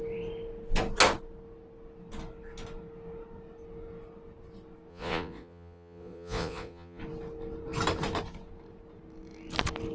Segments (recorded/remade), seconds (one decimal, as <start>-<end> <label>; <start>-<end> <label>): 0.0-4.9 recorded; 4.9-7.0 remade; 7.0-9.9 recorded